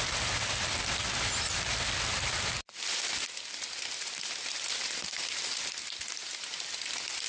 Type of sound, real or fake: real